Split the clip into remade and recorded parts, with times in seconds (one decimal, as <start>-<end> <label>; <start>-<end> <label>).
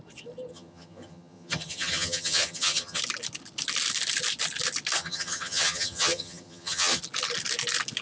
0.0-0.5 recorded; 0.5-3.0 remade; 3.0-5.0 recorded; 5.0-7.0 remade; 7.0-8.0 recorded